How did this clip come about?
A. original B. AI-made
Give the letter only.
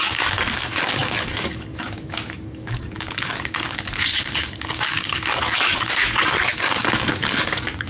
B